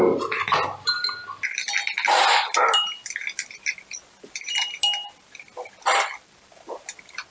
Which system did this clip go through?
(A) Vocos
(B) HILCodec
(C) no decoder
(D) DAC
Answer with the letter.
C